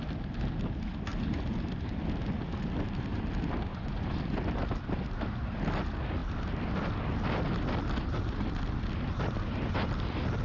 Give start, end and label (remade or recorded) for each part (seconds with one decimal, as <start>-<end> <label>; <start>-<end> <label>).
0.0-3.7 recorded; 3.7-4.2 remade; 4.2-10.4 recorded